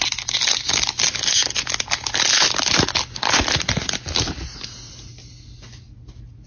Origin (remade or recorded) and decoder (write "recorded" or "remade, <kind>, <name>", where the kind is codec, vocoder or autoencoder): recorded